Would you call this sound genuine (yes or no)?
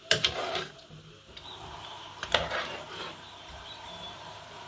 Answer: no